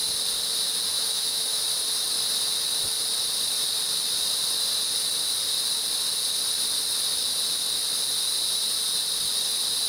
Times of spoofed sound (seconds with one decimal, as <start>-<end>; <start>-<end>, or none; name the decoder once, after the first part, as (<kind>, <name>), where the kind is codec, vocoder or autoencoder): 0.9-1.6 (autoencoder, DAC-VAE)